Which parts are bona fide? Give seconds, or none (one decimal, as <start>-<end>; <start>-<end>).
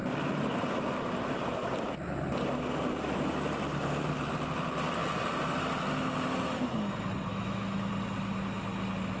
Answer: 0.0-7.3; 7.9-9.2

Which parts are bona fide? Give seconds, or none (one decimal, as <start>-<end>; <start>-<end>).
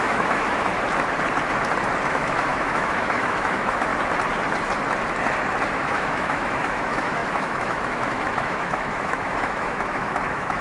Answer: 0.7-2.1; 3.9-5.7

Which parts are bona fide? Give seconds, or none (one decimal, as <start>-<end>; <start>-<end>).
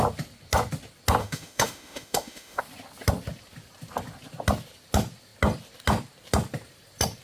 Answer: 0.0-1.2; 2.6-7.2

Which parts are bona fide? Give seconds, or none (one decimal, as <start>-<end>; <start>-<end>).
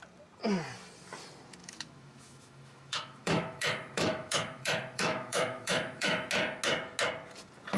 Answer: 0.0-1.6; 6.3-7.8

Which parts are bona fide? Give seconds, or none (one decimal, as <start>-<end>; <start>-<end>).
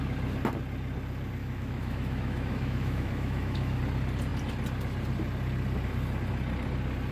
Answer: 0.0-1.4; 3.8-7.1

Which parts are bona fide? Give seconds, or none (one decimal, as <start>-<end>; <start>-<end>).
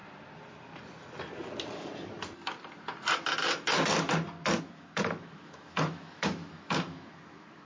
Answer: 0.0-4.6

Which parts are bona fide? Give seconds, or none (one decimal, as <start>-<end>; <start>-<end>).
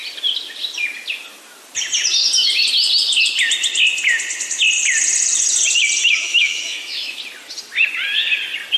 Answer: 0.0-6.2; 7.2-8.8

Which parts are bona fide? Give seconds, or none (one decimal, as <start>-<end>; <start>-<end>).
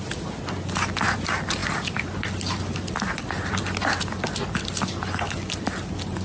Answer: 0.0-6.2